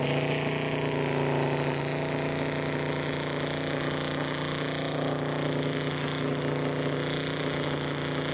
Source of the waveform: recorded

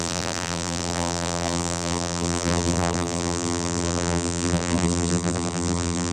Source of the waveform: remade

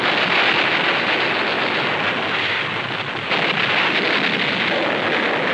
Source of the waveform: recorded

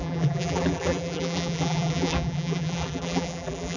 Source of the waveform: remade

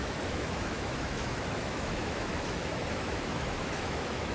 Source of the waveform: remade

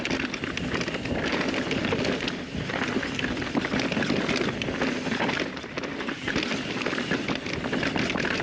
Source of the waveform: recorded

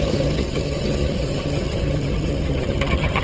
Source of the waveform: remade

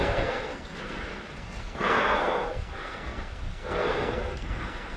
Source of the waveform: remade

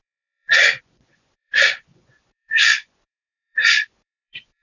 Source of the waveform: remade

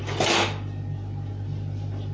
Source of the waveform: recorded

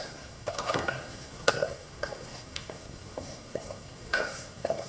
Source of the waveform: remade